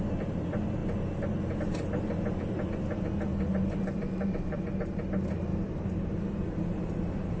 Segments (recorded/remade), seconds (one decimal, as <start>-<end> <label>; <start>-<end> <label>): 0.0-3.3 recorded; 3.3-4.8 remade; 4.8-5.5 recorded; 5.5-7.4 remade